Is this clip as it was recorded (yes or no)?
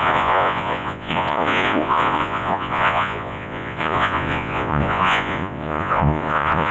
no